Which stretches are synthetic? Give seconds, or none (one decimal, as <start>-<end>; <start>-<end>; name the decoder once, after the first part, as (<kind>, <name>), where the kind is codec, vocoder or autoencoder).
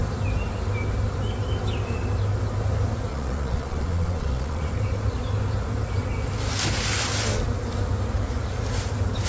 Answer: 3.1-4.7 (vocoder, Vocos)